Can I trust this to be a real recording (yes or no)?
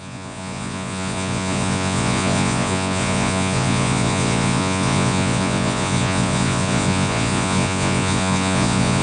no